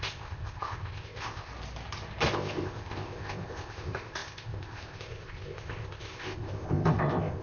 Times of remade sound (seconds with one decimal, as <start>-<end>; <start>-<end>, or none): 0.0-1.5; 2.3-7.4